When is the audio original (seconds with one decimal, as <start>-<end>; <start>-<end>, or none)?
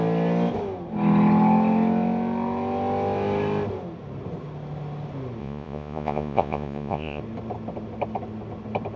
0.0-5.4; 7.2-9.0